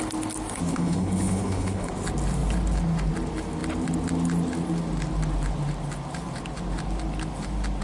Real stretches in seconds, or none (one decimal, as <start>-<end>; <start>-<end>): 0.0-0.7; 1.9-7.8

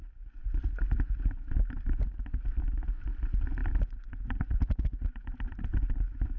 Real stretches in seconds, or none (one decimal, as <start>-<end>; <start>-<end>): 0.0-6.4

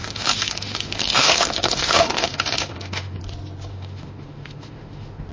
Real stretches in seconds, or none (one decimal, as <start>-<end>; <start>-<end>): 3.2-3.7

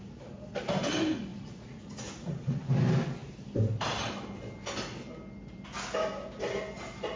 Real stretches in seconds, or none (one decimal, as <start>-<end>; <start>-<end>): 0.0-1.3; 2.6-7.2